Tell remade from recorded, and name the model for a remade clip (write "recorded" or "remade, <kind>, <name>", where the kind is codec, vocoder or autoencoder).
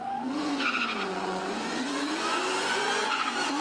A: remade, vocoder, Vocos